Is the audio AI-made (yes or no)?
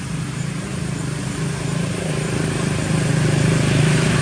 yes